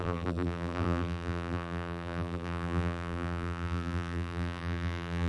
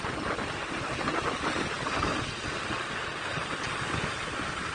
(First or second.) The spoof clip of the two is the first